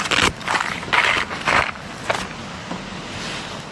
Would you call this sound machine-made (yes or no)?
no